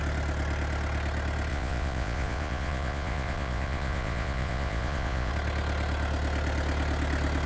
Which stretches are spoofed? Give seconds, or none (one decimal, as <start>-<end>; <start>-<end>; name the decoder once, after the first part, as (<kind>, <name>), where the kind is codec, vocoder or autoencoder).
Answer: 1.5-5.3 (vocoder, Vocos)